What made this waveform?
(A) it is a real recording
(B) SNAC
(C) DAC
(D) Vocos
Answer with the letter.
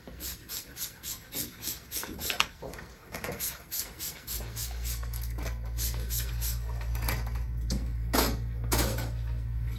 B